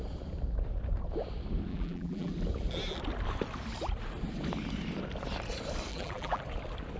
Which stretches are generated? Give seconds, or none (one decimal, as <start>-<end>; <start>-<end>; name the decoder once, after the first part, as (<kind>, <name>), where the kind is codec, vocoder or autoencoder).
1.7-2.3 (vocoder, BigVGAN v2); 5.9-6.4